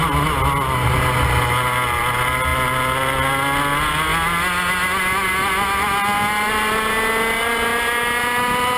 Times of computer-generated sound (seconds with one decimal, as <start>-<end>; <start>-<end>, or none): none